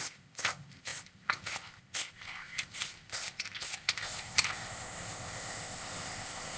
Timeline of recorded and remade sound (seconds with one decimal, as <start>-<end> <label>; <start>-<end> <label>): 0.0-6.6 remade